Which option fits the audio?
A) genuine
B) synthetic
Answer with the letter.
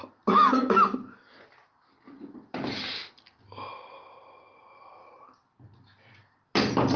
A